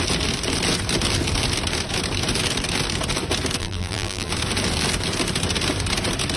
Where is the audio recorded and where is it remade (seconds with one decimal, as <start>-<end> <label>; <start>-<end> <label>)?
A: 0.0-3.6 recorded; 3.6-4.3 remade; 4.3-6.4 recorded